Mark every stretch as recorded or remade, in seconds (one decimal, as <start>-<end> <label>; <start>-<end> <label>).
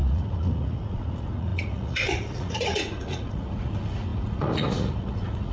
0.0-5.5 remade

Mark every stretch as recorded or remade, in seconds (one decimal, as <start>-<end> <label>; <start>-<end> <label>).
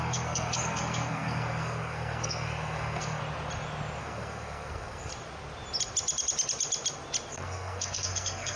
0.0-3.2 remade; 3.2-4.0 recorded; 4.0-5.1 remade; 5.1-7.3 recorded; 7.3-8.6 remade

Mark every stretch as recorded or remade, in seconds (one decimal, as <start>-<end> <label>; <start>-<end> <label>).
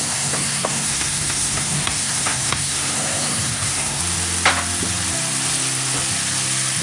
0.0-4.0 remade; 4.0-6.8 recorded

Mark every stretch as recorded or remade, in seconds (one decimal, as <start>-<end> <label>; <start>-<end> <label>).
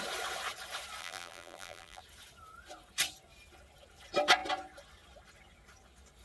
0.0-1.0 recorded; 1.0-2.0 remade; 2.0-6.2 recorded